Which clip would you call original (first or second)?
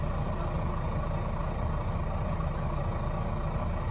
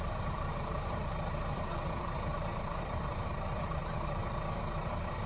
first